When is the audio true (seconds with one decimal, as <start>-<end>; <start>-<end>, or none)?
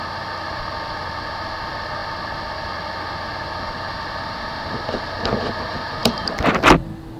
0.0-7.2